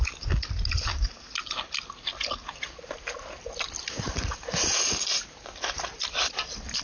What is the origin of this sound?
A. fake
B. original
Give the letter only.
B